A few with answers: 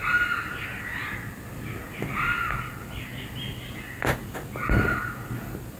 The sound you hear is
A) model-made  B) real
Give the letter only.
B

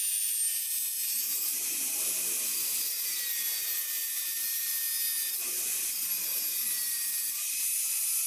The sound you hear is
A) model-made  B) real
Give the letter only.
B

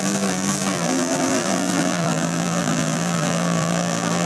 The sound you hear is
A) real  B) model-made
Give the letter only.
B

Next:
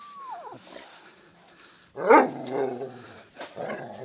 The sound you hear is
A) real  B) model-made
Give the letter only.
B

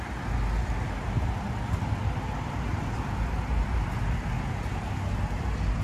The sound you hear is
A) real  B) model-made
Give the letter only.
A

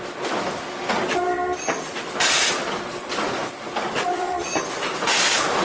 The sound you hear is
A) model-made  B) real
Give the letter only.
A